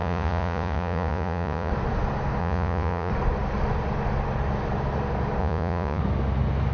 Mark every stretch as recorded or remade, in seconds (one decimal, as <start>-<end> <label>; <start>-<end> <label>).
0.0-1.7 remade; 1.7-2.4 recorded; 2.4-3.1 remade; 3.1-5.4 recorded; 5.4-6.0 remade; 6.0-6.7 recorded